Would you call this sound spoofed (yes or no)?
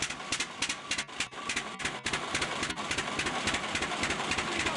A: no